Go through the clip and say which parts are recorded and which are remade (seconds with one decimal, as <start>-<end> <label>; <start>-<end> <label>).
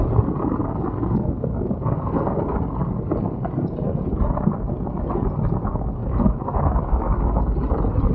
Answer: 0.0-0.6 recorded; 0.6-2.4 remade; 2.4-6.0 recorded; 6.0-7.4 remade; 7.4-8.1 recorded